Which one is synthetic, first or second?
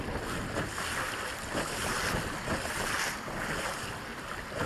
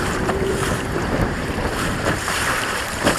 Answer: second